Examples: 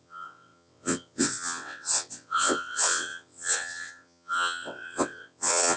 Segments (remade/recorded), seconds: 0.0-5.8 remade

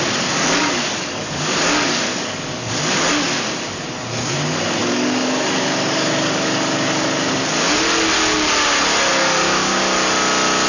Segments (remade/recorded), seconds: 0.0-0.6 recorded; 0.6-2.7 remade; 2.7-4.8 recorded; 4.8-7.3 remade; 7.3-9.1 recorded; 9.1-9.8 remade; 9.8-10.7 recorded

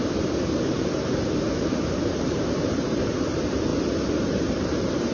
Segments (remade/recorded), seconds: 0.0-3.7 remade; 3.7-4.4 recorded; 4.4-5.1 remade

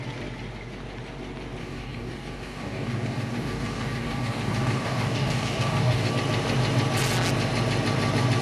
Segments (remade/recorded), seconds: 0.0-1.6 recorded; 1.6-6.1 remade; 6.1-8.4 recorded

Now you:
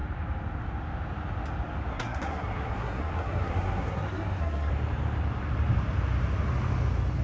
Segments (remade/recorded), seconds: 0.0-1.9 recorded; 1.9-4.7 remade; 4.7-7.2 recorded

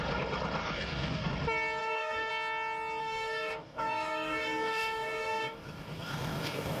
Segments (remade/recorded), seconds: 0.0-0.6 recorded; 0.6-1.3 remade; 1.3-1.8 recorded; 1.8-2.3 remade; 2.3-3.0 recorded; 3.0-6.8 remade

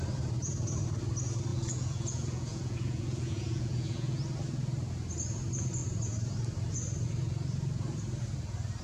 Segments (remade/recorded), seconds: 0.0-1.5 recorded; 1.5-4.2 remade; 4.2-8.8 recorded